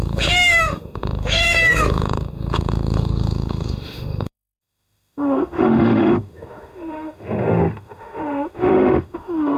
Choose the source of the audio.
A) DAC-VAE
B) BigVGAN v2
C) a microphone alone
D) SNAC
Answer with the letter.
A